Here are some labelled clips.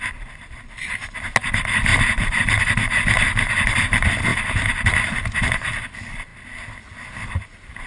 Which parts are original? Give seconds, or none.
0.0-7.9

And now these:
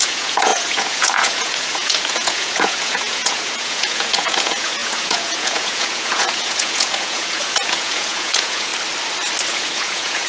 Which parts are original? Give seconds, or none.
8.7-9.5

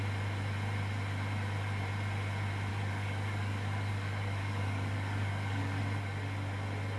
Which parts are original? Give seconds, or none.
0.0-2.7; 5.8-7.0

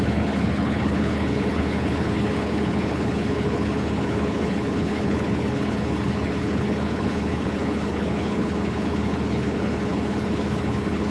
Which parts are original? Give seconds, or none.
none

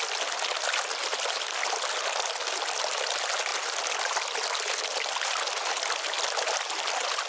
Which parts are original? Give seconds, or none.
0.0-7.3

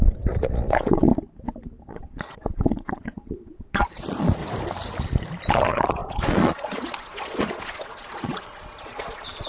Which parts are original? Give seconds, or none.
1.1-1.9; 4.4-5.5